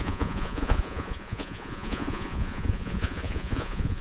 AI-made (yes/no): yes